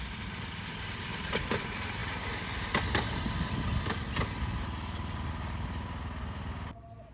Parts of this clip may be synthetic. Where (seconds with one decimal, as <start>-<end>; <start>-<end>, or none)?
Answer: 0.7-1.6